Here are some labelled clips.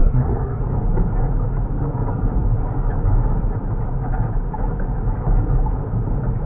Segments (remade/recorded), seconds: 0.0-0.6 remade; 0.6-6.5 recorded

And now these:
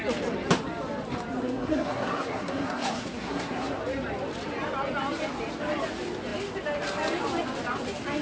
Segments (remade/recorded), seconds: 0.0-1.4 recorded; 1.4-3.8 remade; 3.8-8.2 recorded

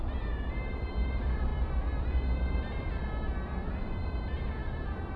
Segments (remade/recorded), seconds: 0.0-3.0 remade; 3.0-3.6 recorded; 3.6-5.2 remade